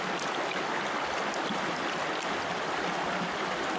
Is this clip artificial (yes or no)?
no